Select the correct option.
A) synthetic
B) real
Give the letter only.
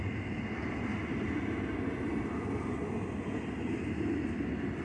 B